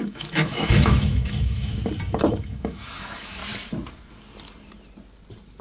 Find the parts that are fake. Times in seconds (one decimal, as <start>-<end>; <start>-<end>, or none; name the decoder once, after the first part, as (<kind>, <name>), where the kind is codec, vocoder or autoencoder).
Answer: 0.0-1.7 (autoencoder, DAC-VAE); 2.3-3.4